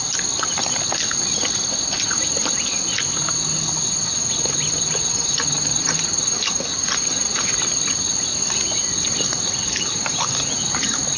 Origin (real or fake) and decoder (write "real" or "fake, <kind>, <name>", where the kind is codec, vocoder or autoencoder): real